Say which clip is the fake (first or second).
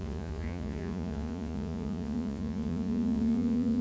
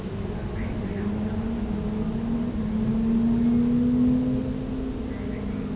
first